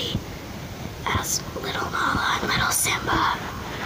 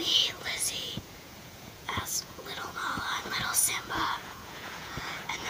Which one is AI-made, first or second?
second